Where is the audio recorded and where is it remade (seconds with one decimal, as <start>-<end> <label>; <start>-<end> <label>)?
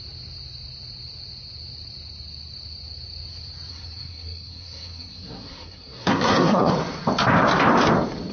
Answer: 0.0-3.7 recorded; 3.7-6.7 remade; 6.7-8.3 recorded